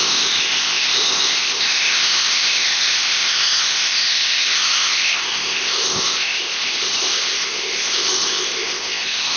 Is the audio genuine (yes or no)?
no